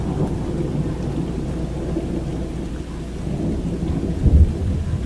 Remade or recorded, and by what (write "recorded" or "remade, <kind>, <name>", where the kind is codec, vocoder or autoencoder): recorded